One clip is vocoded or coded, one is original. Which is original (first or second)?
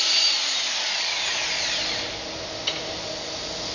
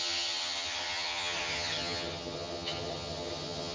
first